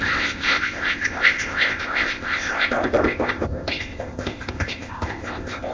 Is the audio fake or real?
fake